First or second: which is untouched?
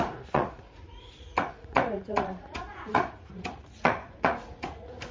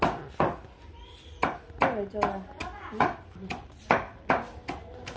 second